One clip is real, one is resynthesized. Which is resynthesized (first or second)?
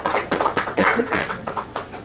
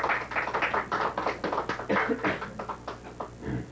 first